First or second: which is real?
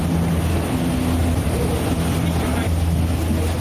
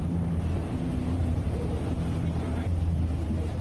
first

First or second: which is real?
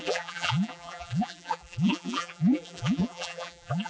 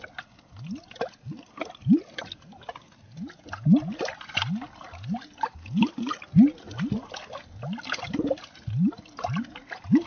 second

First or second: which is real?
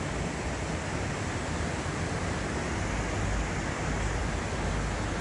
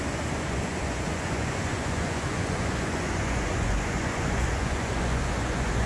first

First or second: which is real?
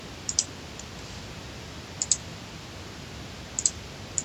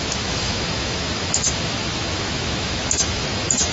first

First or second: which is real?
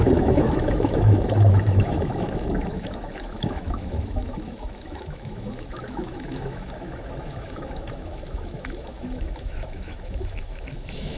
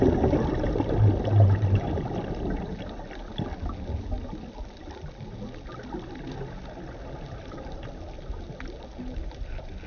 second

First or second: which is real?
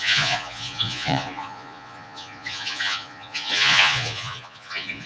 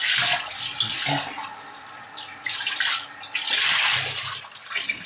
second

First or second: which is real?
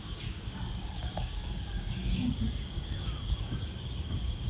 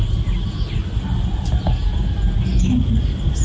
second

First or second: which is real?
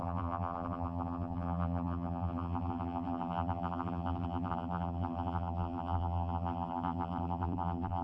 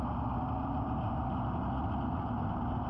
second